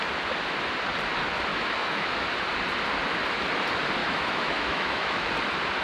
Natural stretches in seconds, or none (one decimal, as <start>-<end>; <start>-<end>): 0.0-1.5; 2.3-4.0; 5.3-5.8